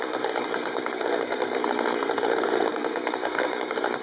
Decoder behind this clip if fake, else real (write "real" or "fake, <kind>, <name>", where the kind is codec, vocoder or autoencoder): fake, codec, SNAC